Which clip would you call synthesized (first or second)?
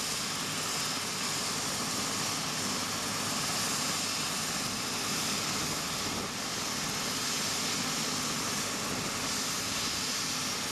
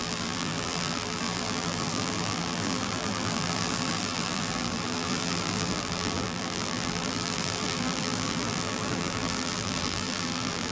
second